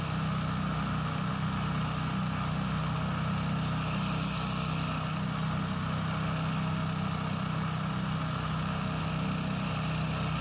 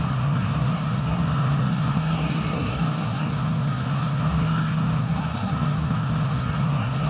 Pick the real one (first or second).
first